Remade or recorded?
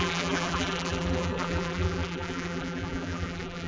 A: remade